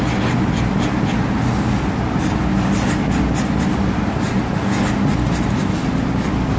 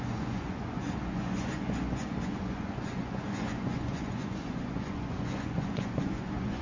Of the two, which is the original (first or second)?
first